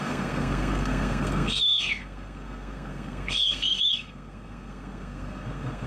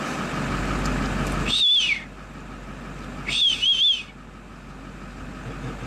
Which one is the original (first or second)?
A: second